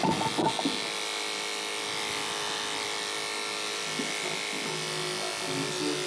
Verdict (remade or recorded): recorded